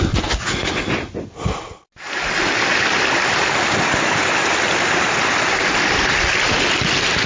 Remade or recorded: recorded